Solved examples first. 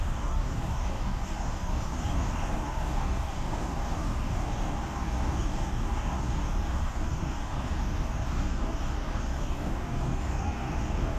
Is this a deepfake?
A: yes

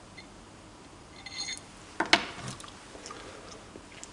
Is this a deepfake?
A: no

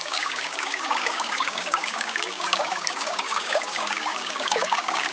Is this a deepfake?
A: yes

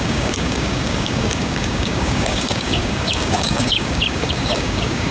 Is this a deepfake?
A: yes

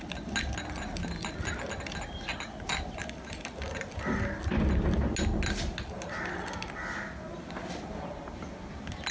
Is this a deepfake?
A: no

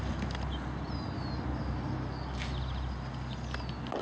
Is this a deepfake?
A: no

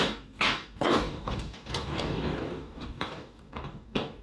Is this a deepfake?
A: yes